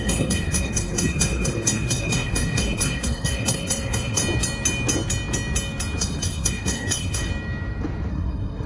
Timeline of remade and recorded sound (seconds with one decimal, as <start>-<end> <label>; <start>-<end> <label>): 0.0-4.2 remade; 4.2-6.0 recorded; 6.0-7.3 remade; 7.3-8.1 recorded; 8.1-8.7 remade